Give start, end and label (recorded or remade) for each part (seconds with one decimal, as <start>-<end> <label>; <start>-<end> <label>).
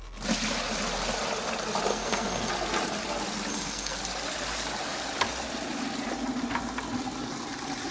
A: 0.0-1.9 recorded; 1.9-2.5 remade; 2.5-3.5 recorded; 3.5-4.0 remade; 4.0-7.9 recorded